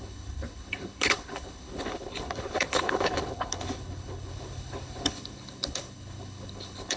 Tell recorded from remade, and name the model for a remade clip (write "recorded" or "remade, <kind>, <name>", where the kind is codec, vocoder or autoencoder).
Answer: remade, codec, HILCodec